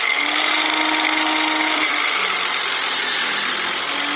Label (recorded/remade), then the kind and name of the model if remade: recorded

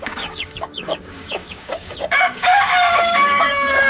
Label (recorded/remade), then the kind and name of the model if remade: remade, codec, DAC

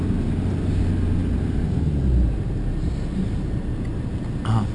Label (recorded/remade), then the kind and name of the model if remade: recorded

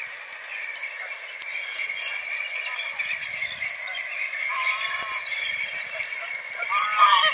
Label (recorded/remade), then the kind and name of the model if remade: recorded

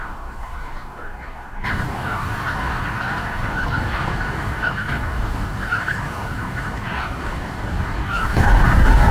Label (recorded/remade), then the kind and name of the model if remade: remade, codec, DAC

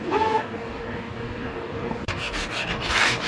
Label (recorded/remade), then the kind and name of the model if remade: remade, codec, DAC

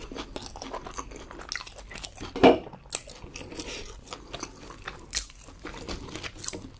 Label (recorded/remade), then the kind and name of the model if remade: recorded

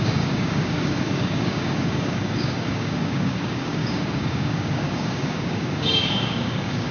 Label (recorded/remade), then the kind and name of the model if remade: remade, codec, DAC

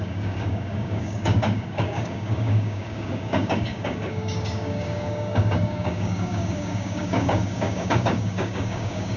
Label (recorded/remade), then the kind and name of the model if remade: remade, codec, DAC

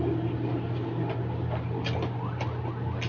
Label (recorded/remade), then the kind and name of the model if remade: recorded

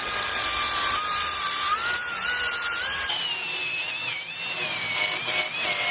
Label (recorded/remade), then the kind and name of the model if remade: recorded